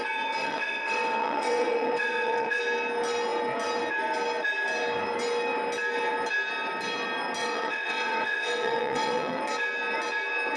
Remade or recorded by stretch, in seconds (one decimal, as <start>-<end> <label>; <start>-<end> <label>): 0.0-0.4 recorded; 0.4-2.6 remade; 2.6-7.4 recorded; 7.4-9.4 remade; 9.4-10.6 recorded